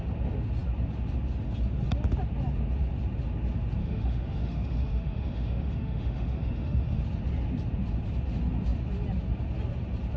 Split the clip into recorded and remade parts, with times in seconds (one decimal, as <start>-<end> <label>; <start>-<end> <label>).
0.0-3.8 recorded; 3.8-7.0 remade; 7.0-10.2 recorded